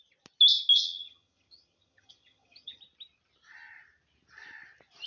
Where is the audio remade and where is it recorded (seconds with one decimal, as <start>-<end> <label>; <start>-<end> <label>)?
0.0-0.7 recorded; 0.7-2.8 remade; 2.8-5.1 recorded